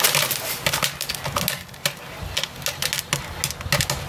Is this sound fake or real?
real